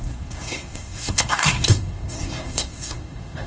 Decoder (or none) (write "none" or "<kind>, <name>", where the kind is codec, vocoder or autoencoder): codec, SNAC